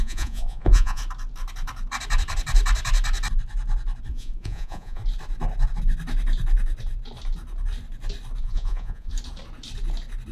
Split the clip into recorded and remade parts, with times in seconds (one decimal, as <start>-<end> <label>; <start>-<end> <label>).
0.0-1.0 remade; 1.0-4.1 recorded; 4.1-5.0 remade; 5.0-8.4 recorded; 8.4-9.1 remade; 9.1-10.3 recorded